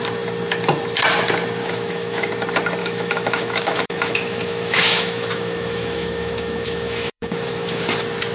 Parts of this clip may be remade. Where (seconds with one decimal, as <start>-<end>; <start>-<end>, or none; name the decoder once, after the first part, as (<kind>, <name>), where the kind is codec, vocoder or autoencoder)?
1.6-2.3 (autoencoder, DAC-VAE); 2.8-7.8